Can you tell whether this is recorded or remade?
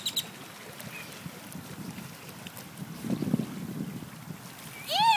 recorded